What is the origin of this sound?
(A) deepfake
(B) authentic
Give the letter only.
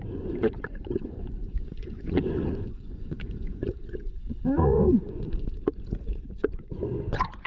A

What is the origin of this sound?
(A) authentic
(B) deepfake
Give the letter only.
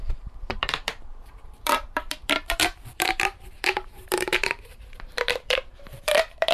B